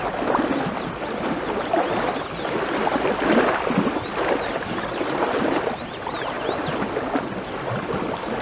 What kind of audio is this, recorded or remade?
recorded